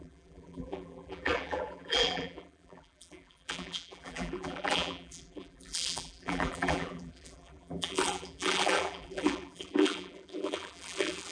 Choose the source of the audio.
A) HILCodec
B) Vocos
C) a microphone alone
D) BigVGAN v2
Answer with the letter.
D